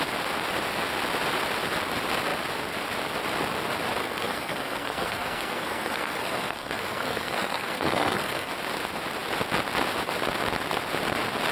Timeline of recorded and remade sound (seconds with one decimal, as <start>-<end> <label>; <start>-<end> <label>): 0.0-4.0 recorded; 4.0-8.5 remade; 8.5-11.5 recorded